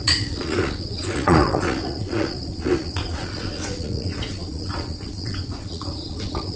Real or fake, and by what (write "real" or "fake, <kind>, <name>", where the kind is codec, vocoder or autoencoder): fake, vocoder, Vocos